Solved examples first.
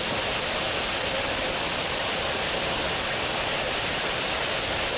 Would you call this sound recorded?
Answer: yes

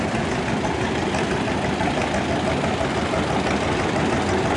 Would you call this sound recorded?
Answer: yes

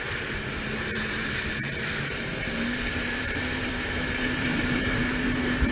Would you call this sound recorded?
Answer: no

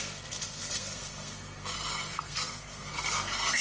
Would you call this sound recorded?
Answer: no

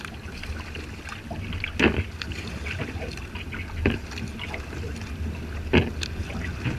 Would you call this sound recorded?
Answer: yes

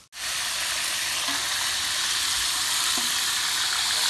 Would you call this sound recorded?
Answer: yes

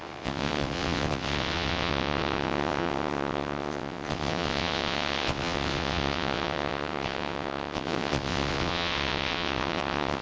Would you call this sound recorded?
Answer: no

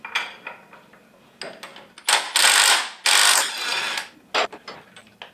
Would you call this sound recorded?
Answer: yes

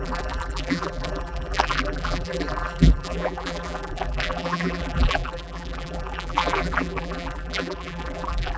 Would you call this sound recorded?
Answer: no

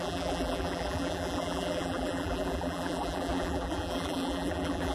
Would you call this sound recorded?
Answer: no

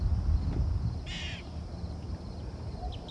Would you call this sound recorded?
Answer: yes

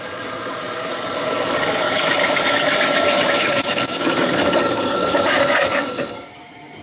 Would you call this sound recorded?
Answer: no